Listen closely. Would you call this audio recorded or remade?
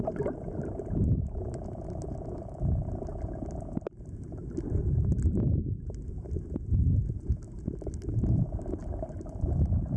remade